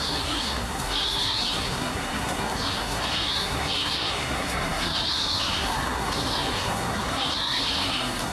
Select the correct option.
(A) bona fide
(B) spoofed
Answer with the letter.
B